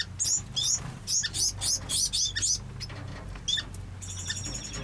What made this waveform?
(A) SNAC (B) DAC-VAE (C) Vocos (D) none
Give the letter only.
D